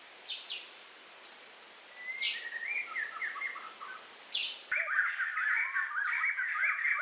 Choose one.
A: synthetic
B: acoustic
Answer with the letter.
B